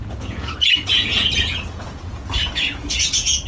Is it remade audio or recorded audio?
remade